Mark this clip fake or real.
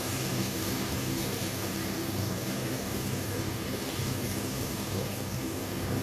fake